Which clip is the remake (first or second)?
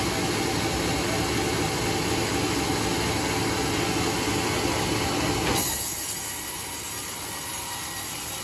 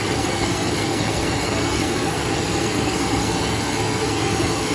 second